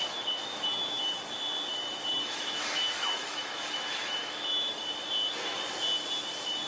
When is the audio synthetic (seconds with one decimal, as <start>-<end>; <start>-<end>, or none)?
0.0-1.2; 1.7-4.8